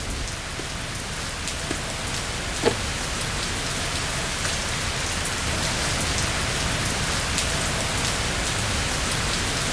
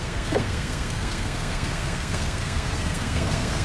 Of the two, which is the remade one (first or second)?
second